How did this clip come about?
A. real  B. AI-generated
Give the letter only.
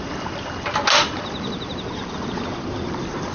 A